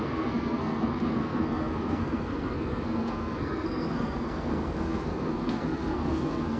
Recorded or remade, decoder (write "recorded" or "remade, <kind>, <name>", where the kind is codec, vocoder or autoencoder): remade, codec, SNAC